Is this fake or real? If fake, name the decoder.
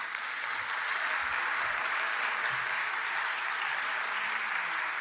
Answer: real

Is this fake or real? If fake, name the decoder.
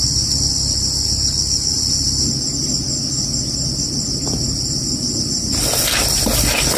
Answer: real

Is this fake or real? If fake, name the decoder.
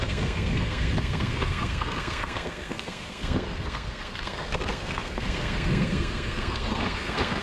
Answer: fake, codec, SNAC